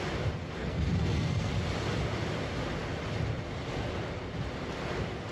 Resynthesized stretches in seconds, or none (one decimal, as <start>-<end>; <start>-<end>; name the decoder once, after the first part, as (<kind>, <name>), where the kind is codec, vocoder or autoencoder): 0.6-1.5 (codec, SNAC)